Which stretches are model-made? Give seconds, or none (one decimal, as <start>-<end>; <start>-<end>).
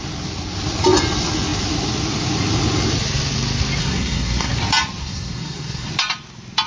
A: 3.8-4.5; 5.0-5.9